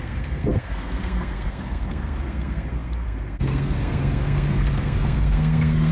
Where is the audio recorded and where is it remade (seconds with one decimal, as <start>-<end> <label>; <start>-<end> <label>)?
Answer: 0.0-5.9 remade